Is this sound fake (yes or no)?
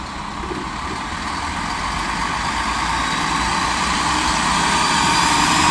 no